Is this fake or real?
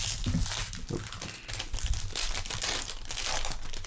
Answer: real